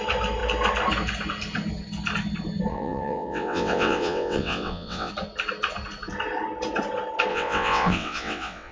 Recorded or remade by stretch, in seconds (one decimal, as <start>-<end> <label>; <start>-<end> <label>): 0.0-2.7 recorded; 2.7-5.1 remade; 5.1-7.3 recorded; 7.3-8.7 remade